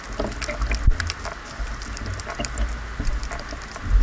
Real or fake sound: real